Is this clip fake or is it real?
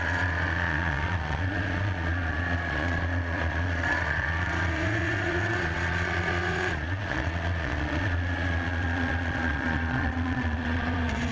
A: fake